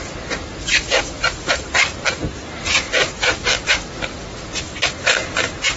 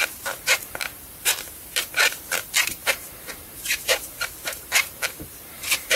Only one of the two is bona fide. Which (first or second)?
first